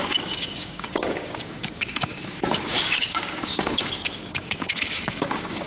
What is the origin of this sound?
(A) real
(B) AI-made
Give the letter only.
B